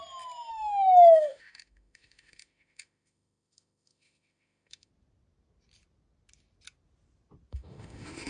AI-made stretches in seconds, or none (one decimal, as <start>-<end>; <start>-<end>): 0.5-4.9; 7.5-8.3